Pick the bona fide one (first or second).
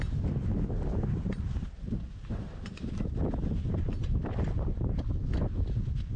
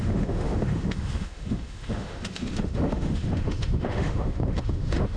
first